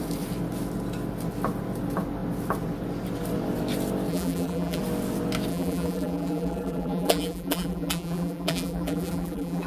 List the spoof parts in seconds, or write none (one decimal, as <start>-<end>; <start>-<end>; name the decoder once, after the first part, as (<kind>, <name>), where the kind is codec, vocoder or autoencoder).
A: 4.1-4.8 (vocoder, BigVGAN v2); 5.5-9.7